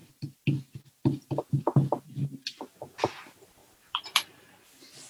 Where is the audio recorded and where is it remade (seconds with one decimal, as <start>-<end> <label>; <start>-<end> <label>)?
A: 0.0-3.6 recorded; 3.6-4.5 remade; 4.5-5.1 recorded